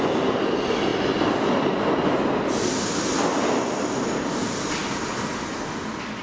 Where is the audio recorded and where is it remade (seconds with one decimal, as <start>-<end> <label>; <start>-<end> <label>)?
0.0-6.2 recorded